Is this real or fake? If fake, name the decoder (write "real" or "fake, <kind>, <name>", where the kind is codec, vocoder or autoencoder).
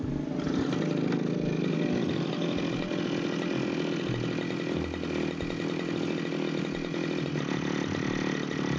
real